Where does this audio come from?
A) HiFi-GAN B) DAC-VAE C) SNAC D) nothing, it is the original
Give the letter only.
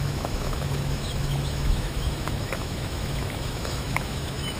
B